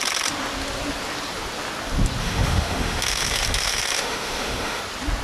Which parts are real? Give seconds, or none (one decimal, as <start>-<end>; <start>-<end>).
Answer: 0.0-2.2; 4.8-5.2